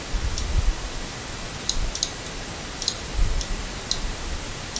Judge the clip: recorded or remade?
recorded